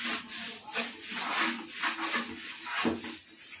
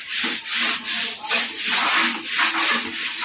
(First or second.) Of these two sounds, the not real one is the second